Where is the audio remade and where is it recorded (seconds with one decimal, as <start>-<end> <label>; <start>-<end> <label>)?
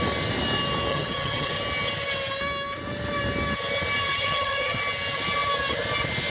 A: 0.0-0.9 recorded; 0.9-1.5 remade; 1.5-4.1 recorded; 4.1-4.8 remade; 4.8-6.3 recorded